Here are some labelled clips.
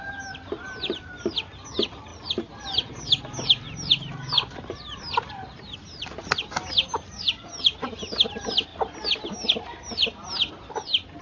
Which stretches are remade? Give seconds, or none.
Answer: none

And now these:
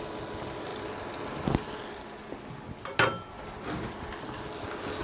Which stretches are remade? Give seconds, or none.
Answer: none

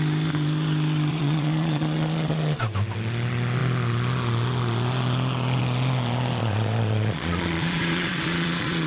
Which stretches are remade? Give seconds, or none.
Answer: 1.1-2.6 (vocoder, Vocos); 6.4-8.9

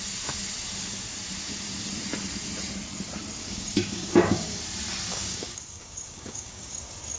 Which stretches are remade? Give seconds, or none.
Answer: 3.4-4.6 (codec, DAC); 5.1-6.8

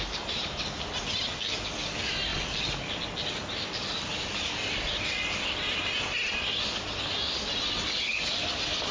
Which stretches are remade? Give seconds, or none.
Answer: none

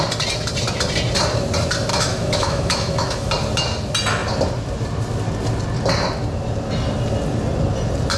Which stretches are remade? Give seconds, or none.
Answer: 1.9-3.3 (autoencoder, DAC-VAE)

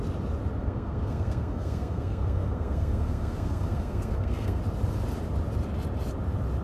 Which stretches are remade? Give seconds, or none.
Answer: 0.6-4.6 (codec, SNAC)